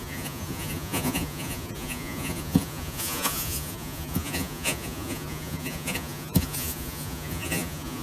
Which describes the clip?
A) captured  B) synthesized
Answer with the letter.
B